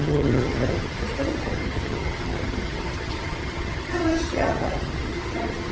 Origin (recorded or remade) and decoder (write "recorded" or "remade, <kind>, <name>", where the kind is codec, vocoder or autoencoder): remade, vocoder, HiFi-GAN